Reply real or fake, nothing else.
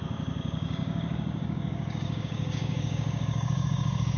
fake